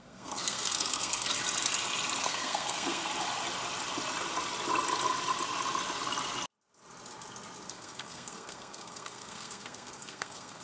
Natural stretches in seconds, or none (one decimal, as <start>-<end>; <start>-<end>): 1.3-2.2; 3.1-7.7